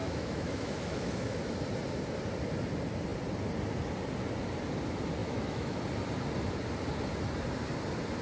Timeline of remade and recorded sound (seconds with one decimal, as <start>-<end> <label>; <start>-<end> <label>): 0.0-1.4 remade; 1.4-5.2 recorded; 5.2-5.8 remade; 5.8-8.2 recorded